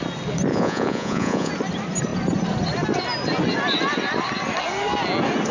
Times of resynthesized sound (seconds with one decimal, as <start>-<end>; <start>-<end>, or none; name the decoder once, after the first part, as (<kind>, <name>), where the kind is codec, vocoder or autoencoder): 0.5-1.5 (vocoder, Vocos)